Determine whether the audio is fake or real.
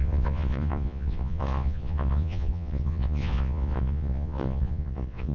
fake